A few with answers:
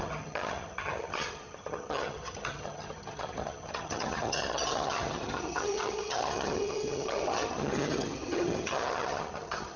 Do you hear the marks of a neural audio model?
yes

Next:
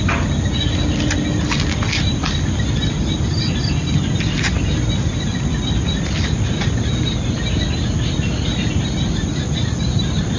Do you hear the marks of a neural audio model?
no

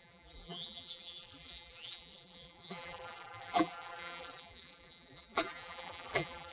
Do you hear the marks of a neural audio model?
yes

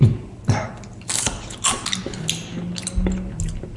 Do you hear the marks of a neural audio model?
no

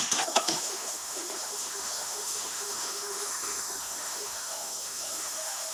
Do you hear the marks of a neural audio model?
yes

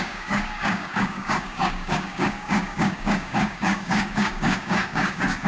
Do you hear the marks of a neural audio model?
yes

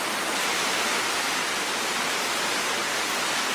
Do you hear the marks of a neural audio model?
no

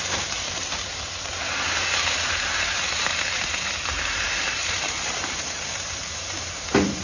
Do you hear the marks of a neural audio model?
yes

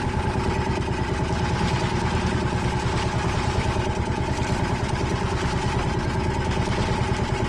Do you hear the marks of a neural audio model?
no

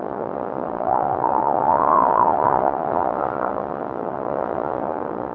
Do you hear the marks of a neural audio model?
yes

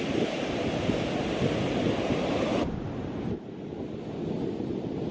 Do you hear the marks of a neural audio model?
no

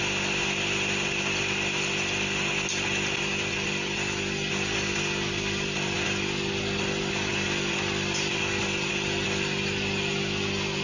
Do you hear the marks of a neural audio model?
no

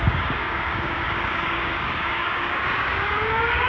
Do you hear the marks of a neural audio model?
yes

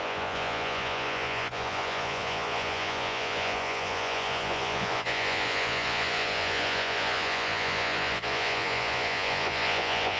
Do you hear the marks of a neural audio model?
yes